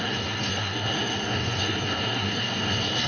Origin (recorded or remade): remade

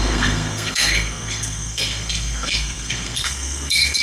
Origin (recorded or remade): remade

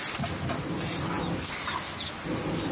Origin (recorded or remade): recorded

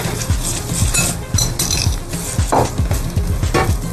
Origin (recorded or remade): recorded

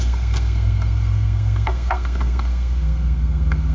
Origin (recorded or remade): remade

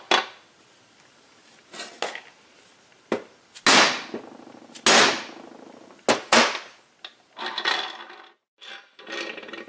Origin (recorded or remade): recorded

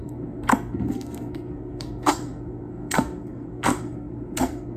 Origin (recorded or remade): remade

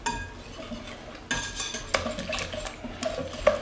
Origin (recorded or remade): recorded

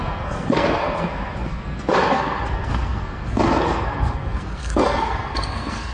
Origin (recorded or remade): remade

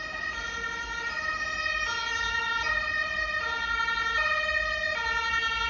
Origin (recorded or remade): recorded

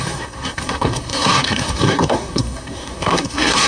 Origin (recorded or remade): remade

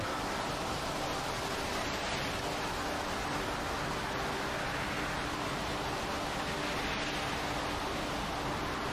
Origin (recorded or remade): recorded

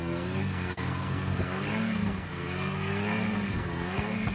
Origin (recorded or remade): remade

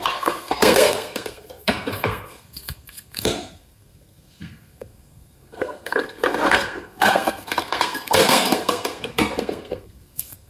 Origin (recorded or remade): remade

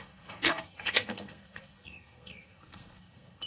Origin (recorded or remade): remade